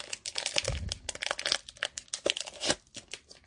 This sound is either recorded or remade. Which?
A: recorded